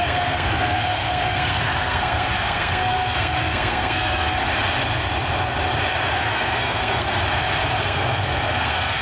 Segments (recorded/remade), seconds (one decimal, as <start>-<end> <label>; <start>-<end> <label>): 0.0-4.4 remade; 4.4-6.1 recorded; 6.1-7.2 remade; 7.2-7.8 recorded; 7.8-9.0 remade